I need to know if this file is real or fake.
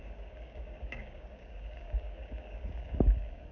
fake